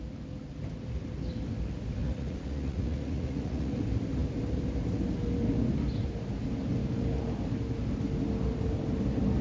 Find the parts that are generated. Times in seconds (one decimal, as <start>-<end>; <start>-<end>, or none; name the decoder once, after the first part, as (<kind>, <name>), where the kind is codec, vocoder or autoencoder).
2.0-3.8 (vocoder, Vocos)